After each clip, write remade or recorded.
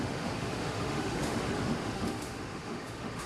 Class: remade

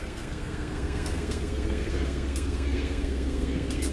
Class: remade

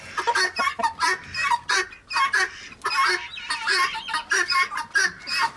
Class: recorded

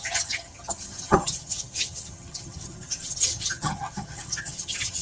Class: remade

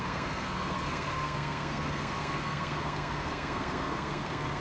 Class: remade